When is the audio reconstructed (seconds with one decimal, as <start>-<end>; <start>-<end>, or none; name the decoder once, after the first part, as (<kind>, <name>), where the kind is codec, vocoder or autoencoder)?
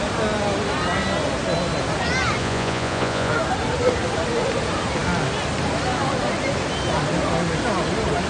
2.4-3.3 (vocoder, Vocos)